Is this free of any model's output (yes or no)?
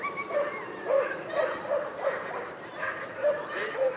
no